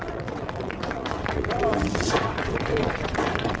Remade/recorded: remade